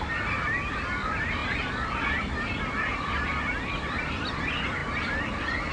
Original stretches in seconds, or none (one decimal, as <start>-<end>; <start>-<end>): 0.0-5.7